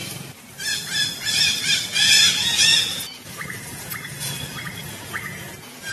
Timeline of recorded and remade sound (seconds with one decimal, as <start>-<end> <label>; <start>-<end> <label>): 0.0-1.1 recorded; 1.1-5.9 remade